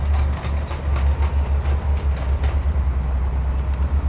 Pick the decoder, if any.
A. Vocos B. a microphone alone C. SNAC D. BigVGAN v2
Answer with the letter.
B